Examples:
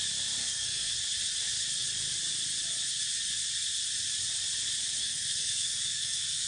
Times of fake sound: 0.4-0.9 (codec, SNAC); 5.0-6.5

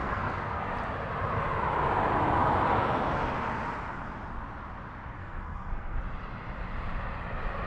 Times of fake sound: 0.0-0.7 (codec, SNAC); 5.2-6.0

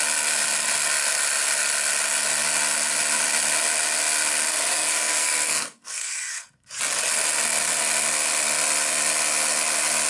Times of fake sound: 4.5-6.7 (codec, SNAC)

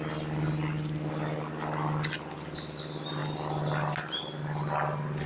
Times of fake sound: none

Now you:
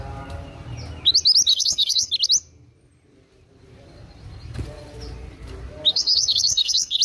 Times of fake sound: 1.5-2.1 (codec, SNAC); 5.9-7.0

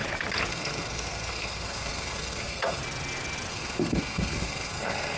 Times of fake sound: 0.5-2.8 (codec, SNAC); 3.5-5.2

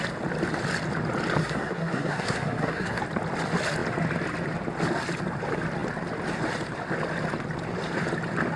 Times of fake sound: 1.4-3.0 (codec, SNAC)

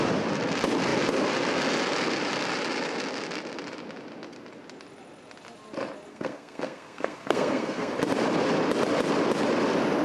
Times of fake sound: 6.1-7.9 (codec, SNAC)